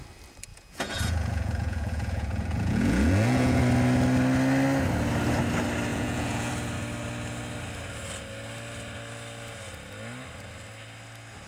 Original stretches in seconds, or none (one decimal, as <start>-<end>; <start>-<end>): 0.0-0.5; 3.6-5.9; 6.5-11.5

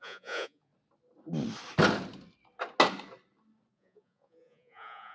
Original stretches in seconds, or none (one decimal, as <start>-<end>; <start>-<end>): 0.7-3.7

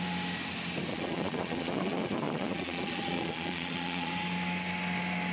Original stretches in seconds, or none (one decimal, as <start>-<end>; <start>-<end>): 0.0-0.9; 4.1-5.3